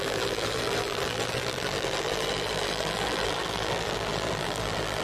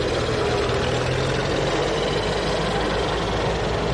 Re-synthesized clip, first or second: first